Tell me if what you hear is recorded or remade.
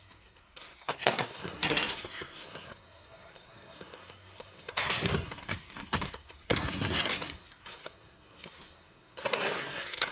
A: remade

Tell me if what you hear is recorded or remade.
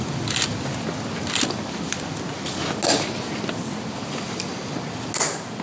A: recorded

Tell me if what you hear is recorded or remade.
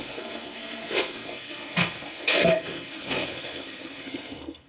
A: remade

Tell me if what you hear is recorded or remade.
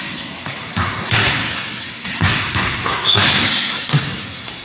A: remade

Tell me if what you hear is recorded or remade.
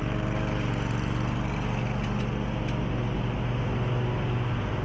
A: recorded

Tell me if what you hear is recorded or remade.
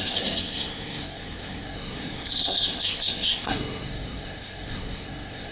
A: remade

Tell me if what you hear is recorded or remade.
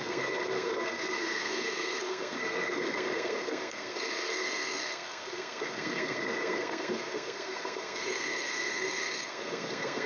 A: remade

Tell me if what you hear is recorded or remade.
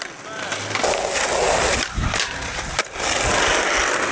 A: recorded